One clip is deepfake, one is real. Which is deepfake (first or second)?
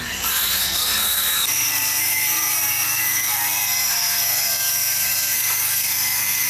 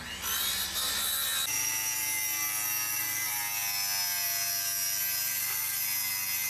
first